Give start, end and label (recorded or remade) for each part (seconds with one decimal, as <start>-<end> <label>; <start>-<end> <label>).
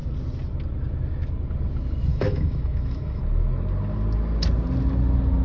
0.0-2.1 recorded; 2.1-3.2 remade; 3.2-5.4 recorded